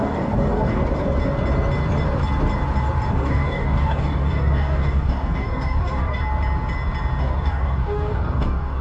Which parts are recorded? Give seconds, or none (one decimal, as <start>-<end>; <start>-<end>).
0.8-3.1; 6.2-7.2